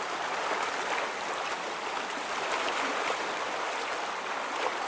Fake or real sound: real